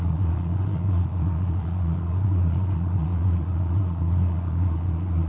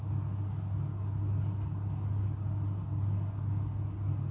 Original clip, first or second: second